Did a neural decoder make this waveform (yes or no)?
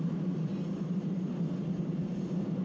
no